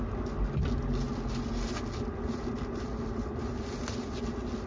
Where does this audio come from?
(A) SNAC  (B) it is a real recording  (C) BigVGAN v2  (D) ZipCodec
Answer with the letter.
B